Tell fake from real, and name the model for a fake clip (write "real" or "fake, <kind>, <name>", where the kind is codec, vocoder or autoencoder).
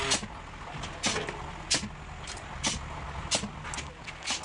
real